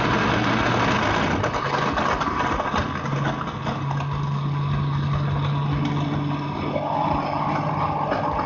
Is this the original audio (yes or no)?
yes